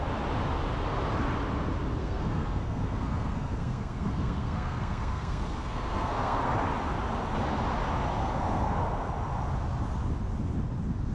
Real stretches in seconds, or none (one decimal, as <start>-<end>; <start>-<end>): 0.0-2.0; 6.5-8.2; 9.1-11.1